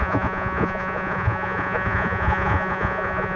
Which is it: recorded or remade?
remade